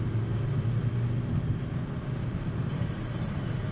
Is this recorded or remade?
recorded